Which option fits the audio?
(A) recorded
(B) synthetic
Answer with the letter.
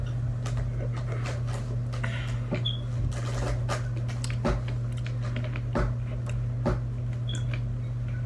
A